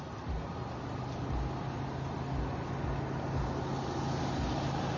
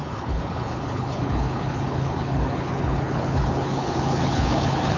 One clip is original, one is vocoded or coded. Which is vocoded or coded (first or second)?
second